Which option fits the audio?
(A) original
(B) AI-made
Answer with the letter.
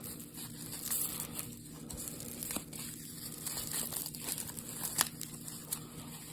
A